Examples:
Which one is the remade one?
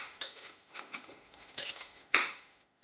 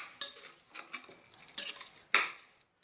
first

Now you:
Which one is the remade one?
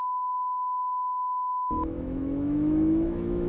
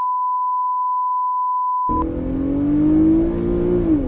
first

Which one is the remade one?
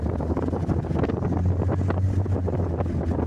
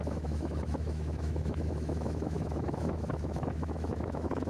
second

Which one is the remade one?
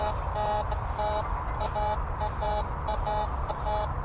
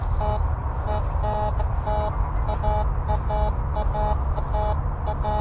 first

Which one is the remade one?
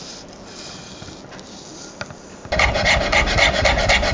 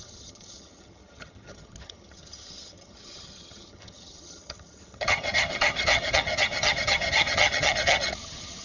second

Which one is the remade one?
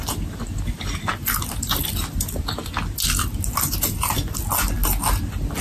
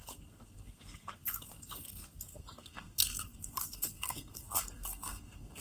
second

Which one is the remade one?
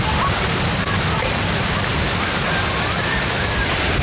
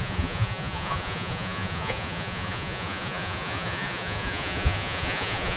second